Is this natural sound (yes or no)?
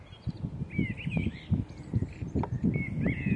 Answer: yes